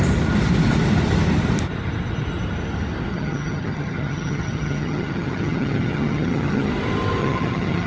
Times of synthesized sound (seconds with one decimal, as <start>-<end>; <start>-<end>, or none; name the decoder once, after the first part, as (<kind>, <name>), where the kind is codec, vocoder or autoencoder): 3.1-6.7 (vocoder, HiFi-GAN); 7.2-7.9